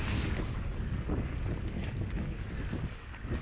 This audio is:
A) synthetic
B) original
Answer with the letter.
A